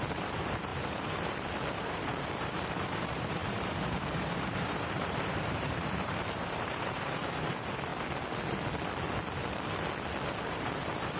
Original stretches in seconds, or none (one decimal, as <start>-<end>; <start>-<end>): 7.9-10.5

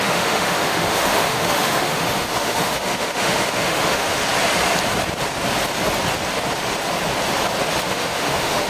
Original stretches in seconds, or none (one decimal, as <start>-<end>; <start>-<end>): 4.2-7.9

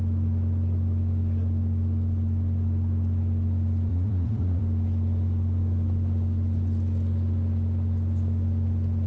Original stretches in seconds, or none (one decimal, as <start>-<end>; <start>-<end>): 0.0-3.9; 4.6-9.1